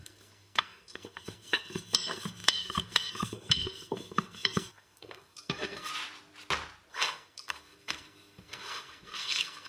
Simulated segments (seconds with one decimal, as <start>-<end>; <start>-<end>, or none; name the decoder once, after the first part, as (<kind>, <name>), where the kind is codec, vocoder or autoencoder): 0.0-5.9 (codec, SNAC); 6.9-9.7